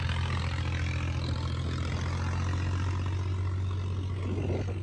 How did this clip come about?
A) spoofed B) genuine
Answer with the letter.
B